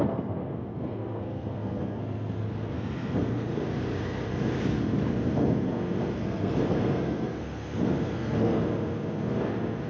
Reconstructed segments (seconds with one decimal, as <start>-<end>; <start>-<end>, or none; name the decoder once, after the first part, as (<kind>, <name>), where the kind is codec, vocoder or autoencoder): 0.0-3.5 (codec, SNAC); 6.1-8.6